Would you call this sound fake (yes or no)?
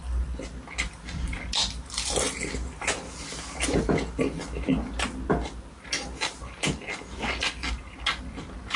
no